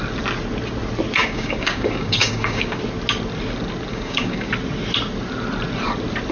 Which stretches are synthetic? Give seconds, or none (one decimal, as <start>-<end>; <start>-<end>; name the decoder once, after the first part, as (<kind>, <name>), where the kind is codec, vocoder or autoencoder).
1.2-2.8 (codec, DAC); 3.9-4.5